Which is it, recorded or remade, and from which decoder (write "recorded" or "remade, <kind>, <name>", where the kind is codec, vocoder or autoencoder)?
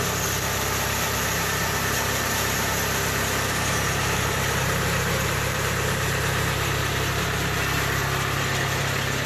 remade, vocoder, BigVGAN v2